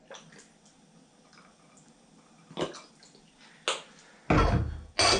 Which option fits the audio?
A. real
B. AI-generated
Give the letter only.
A